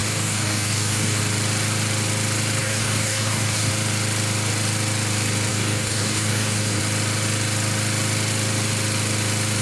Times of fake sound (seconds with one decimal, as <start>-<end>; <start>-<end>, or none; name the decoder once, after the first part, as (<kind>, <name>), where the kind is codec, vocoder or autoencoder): 0.0-1.2 (codec, DAC); 2.6-3.7; 5.5-6.8